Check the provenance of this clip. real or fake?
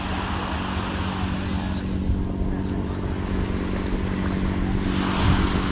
real